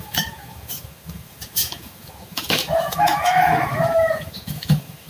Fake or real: fake